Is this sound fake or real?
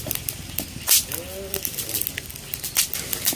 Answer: real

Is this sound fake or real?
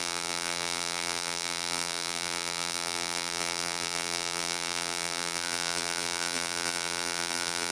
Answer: fake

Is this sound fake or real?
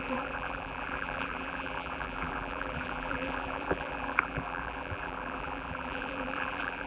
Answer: fake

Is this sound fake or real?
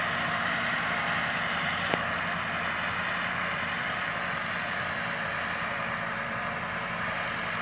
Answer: fake